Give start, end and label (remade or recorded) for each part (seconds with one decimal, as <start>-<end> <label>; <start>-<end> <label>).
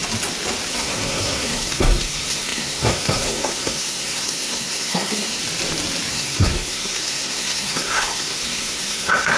0.0-0.7 recorded; 0.7-5.4 remade; 5.4-6.1 recorded; 6.1-9.4 remade